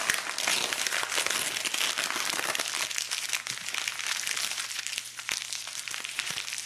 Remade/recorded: recorded